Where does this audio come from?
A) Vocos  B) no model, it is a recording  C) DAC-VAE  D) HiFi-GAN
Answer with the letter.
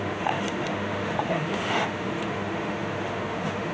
C